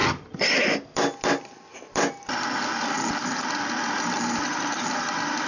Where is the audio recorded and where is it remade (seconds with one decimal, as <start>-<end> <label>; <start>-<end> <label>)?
0.0-5.5 recorded